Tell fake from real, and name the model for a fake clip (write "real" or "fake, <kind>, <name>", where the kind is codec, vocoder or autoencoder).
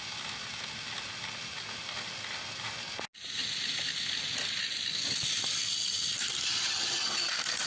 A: real